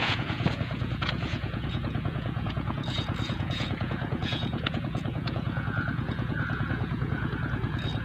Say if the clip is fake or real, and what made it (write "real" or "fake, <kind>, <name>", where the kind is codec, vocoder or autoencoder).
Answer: fake, vocoder, Vocos